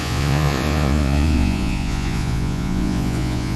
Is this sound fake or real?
fake